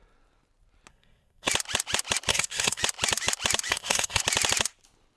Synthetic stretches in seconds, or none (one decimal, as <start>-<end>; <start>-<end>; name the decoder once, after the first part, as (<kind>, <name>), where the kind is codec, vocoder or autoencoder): 0.9-1.5 (codec, SNAC); 2.3-2.8; 3.7-4.2